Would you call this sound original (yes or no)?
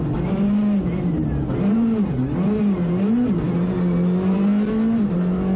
yes